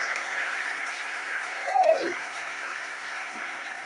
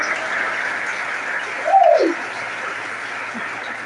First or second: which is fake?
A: first